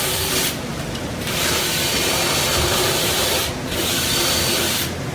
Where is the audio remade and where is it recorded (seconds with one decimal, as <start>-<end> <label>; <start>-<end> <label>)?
0.0-5.1 remade